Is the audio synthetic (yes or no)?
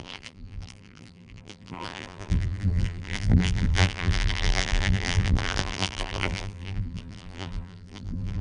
yes